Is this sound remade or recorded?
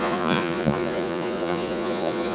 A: remade